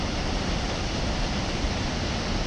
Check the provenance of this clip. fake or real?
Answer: real